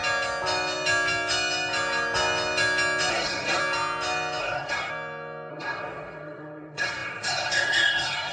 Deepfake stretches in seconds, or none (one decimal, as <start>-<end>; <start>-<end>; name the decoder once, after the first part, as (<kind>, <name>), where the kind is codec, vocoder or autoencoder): 3.1-3.6 (codec, SNAC); 4.4-4.9; 5.5-8.3